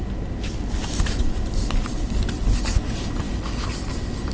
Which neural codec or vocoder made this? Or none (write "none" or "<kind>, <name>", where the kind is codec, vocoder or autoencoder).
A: none